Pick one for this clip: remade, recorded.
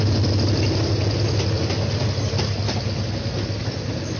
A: recorded